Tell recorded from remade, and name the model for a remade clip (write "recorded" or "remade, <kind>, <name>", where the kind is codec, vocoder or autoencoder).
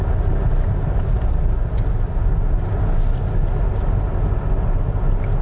recorded